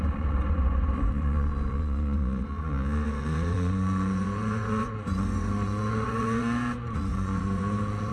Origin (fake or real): fake